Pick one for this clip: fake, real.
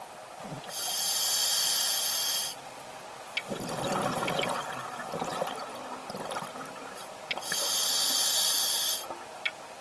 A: real